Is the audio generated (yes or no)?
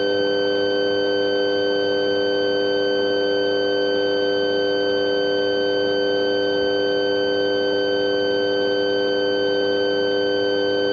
no